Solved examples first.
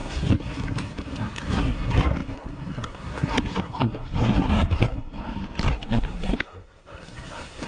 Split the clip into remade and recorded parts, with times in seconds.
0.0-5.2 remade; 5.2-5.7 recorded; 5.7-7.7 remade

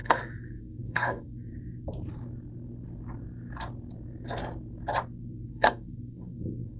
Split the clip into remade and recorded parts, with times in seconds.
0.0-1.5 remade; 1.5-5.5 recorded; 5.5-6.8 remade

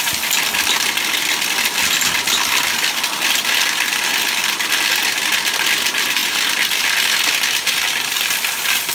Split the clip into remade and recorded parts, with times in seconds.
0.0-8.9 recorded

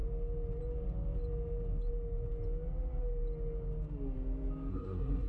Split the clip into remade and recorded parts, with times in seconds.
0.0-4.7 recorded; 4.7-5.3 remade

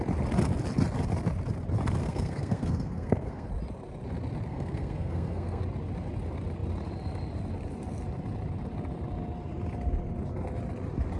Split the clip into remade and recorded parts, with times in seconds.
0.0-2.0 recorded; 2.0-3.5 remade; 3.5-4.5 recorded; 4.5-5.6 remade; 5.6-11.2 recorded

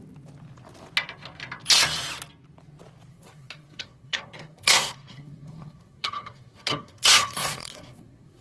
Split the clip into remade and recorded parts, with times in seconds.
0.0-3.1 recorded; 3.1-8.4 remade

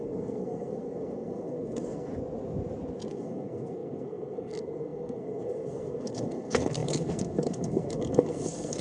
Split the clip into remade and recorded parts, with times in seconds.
0.0-2.1 remade; 2.1-3.1 recorded; 3.1-8.8 remade